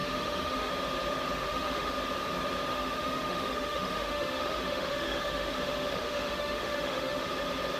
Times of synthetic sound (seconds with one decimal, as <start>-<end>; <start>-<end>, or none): 0.0-0.7; 1.4-1.9; 2.7-7.3